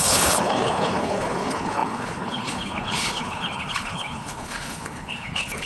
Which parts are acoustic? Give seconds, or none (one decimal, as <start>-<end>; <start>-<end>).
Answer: none